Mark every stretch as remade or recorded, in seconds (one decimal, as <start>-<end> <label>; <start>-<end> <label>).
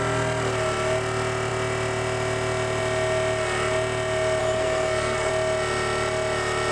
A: 0.0-4.4 recorded; 4.4-5.3 remade; 5.3-6.7 recorded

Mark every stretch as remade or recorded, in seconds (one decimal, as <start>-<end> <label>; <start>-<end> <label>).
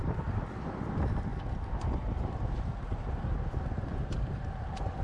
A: 0.0-5.0 recorded